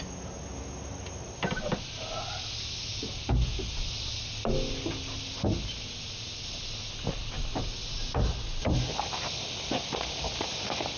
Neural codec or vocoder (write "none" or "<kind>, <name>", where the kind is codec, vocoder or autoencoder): none